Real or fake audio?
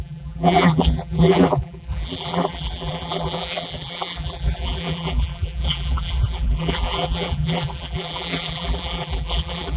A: fake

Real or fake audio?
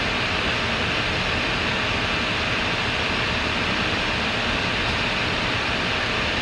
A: real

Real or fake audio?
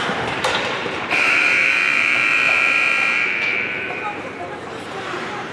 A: fake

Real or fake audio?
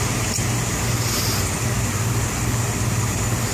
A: fake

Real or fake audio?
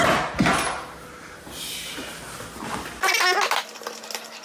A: real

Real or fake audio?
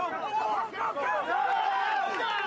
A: real